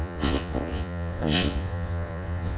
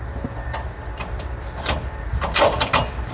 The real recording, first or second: second